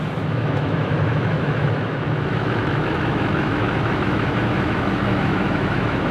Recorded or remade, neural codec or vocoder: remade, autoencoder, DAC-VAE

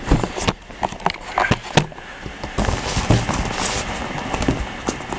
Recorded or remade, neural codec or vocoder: recorded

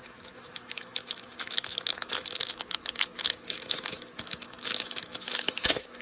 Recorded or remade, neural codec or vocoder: remade, autoencoder, DAC-VAE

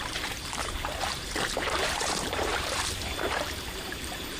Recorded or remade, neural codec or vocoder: remade, vocoder, BigVGAN v2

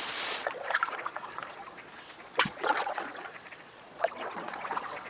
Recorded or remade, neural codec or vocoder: remade, vocoder, Vocos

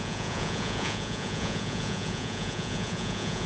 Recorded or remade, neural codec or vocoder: remade, vocoder, Vocos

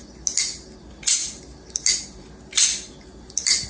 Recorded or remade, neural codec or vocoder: recorded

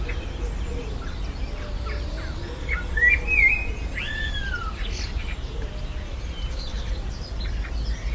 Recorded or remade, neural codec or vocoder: recorded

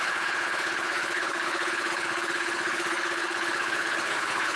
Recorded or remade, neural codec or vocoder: remade, codec, HILCodec